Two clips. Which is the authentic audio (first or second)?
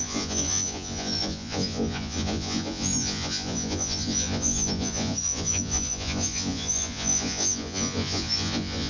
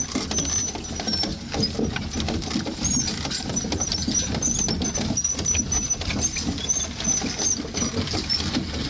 second